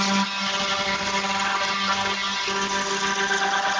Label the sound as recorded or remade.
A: recorded